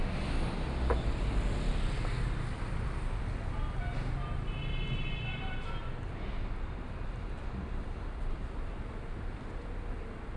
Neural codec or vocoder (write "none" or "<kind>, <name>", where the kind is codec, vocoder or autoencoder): none